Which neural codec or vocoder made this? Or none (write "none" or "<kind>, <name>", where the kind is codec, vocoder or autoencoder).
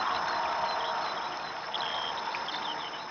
none